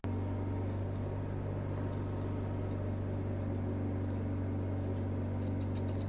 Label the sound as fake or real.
real